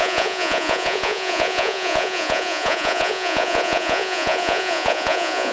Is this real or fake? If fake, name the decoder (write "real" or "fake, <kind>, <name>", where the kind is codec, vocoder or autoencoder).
fake, vocoder, Vocos